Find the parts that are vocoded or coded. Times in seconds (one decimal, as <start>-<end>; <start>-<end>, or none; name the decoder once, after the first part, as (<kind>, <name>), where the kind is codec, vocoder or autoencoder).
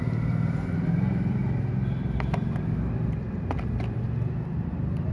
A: none